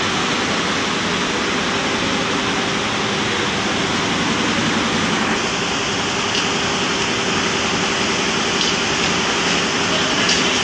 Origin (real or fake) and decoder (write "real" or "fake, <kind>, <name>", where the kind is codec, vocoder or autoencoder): real